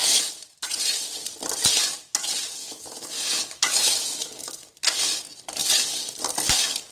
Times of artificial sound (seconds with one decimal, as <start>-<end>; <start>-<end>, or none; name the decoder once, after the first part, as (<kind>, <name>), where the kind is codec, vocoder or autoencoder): 2.6-4.7 (autoencoder, DAC-VAE)